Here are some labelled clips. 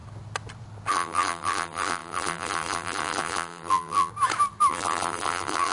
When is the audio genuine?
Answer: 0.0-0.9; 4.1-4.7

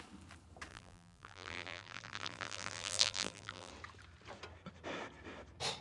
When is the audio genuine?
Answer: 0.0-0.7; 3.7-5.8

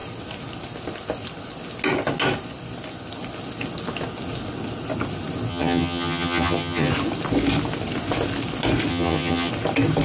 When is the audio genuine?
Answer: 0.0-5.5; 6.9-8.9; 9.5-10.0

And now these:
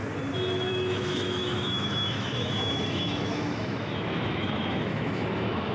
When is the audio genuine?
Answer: 0.0-0.7